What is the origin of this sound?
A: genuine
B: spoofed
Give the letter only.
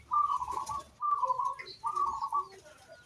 A